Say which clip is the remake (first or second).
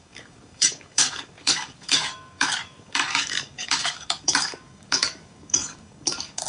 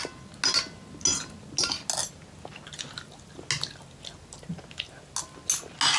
first